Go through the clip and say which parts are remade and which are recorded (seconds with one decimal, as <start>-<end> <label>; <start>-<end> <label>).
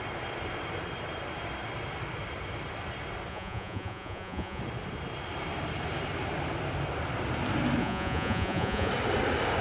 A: 0.0-3.3 recorded; 3.3-4.6 remade; 4.6-7.8 recorded; 7.8-8.9 remade; 8.9-9.6 recorded